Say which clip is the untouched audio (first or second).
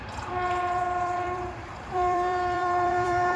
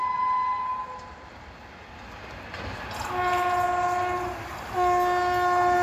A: second